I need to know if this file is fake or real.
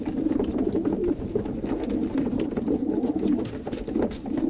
real